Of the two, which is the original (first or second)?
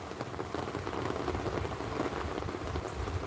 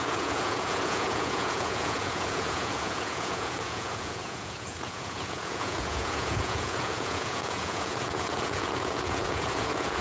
first